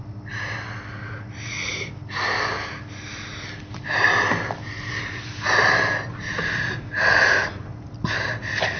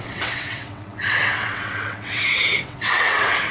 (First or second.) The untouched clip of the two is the first